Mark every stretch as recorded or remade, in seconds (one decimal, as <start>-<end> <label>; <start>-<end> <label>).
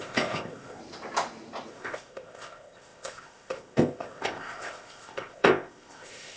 0.0-0.8 remade; 0.8-1.7 recorded; 1.7-6.4 remade